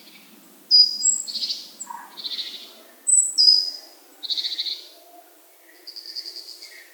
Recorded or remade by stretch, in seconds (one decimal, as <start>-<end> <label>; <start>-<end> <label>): 0.0-6.9 recorded

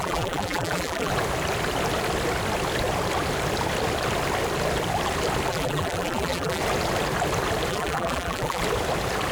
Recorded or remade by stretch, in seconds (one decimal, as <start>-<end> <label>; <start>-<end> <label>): 0.0-1.1 remade; 1.1-5.5 recorded; 5.5-6.6 remade; 6.6-7.7 recorded; 7.7-8.6 remade; 8.6-9.3 recorded

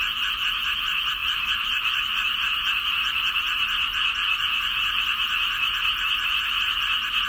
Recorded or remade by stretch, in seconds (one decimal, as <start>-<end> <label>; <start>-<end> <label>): 0.0-3.9 remade; 3.9-7.3 recorded